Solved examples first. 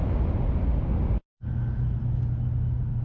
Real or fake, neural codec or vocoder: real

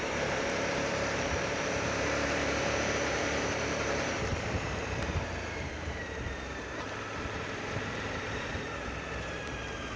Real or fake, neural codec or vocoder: fake, vocoder, BigVGAN v2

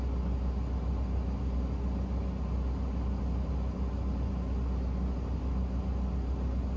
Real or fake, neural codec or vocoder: real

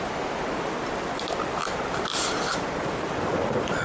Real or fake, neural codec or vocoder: real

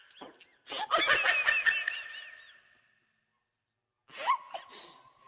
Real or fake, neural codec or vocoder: real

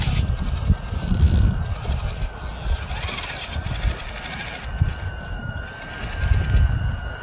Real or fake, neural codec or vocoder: real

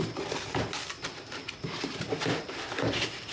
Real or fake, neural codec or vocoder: real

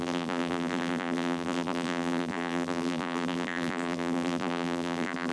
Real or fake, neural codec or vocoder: fake, vocoder, BigVGAN v2